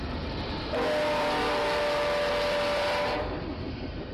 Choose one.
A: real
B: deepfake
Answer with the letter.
A